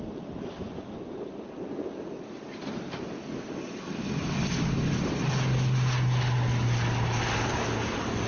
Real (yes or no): yes